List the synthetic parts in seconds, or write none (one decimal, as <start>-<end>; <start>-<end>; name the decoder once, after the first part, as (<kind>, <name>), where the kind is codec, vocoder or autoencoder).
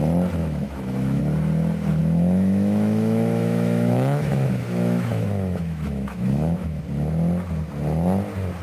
0.4-1.2 (autoencoder, DAC-VAE); 2.0-6.8